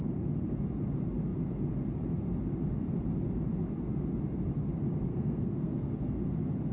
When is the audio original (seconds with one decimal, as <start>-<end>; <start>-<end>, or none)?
0.0-5.1; 6.1-6.7